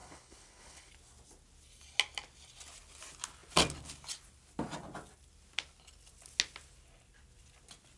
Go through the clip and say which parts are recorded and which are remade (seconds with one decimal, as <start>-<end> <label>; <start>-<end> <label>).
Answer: 0.0-0.9 remade; 0.9-8.0 recorded